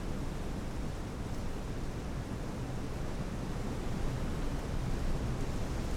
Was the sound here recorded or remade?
recorded